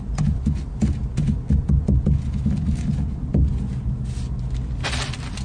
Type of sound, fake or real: real